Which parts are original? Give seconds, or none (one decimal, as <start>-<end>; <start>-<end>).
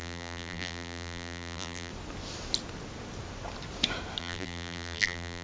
1.9-4.2